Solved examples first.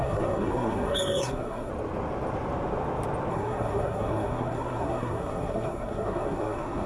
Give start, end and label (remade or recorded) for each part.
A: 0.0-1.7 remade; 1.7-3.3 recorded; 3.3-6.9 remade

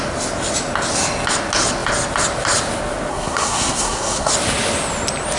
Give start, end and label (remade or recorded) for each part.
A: 0.0-3.1 recorded; 3.1-4.3 remade; 4.3-5.4 recorded